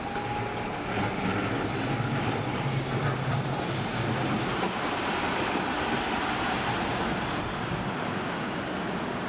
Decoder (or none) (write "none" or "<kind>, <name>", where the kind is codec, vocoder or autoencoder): none